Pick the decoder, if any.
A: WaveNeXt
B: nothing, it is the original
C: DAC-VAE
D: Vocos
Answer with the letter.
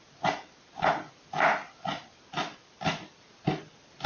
B